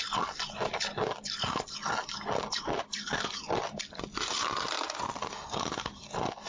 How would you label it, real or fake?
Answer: real